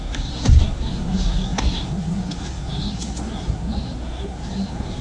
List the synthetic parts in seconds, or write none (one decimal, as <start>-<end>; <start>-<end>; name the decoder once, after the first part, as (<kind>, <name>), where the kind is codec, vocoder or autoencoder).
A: 0.0-5.0 (codec, SNAC)